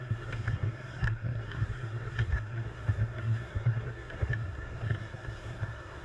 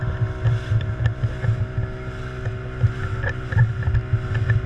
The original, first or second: second